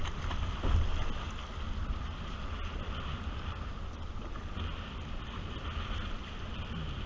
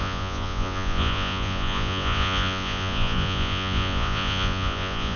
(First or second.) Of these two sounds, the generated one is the second